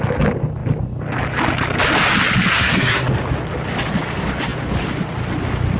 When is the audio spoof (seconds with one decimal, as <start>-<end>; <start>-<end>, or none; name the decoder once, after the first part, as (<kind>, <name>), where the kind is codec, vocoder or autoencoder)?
2.5-3.1 (codec, SNAC)